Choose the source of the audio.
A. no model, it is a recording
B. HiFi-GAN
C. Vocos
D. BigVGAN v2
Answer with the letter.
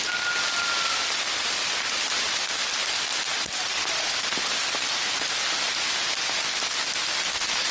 A